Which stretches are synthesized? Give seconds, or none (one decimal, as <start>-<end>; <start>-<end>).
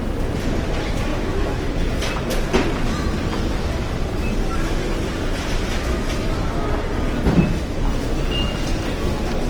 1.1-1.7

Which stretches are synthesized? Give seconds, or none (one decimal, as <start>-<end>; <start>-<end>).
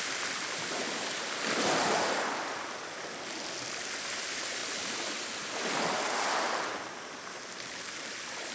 none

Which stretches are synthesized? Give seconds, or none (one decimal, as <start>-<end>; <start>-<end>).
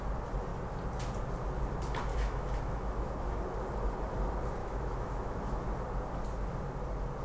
2.1-3.4; 4.6-5.6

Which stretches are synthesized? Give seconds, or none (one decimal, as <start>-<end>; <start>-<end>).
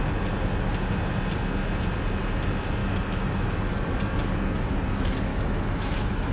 2.8-3.5; 5.3-6.3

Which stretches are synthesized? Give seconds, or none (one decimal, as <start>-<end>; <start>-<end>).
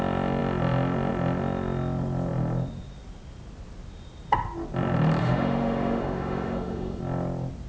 5.2-7.0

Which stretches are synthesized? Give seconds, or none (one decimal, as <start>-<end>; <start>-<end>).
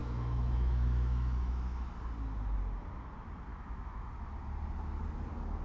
0.0-1.9; 3.5-4.1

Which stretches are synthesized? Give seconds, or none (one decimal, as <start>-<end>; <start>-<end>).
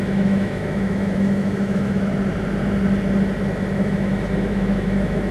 0.0-2.1; 3.7-5.3